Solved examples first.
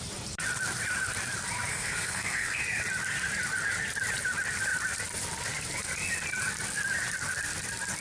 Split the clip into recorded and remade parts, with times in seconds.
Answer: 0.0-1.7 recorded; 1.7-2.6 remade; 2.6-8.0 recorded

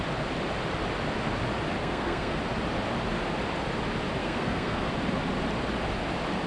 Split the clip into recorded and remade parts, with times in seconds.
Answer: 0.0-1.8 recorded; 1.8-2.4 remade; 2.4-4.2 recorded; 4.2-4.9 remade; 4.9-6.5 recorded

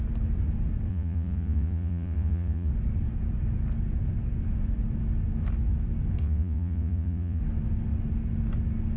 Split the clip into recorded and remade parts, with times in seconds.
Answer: 0.0-0.9 recorded; 0.9-2.7 remade; 2.7-6.2 recorded; 6.2-7.4 remade; 7.4-9.0 recorded

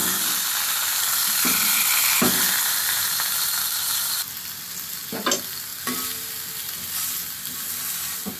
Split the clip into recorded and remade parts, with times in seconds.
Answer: 0.0-8.4 recorded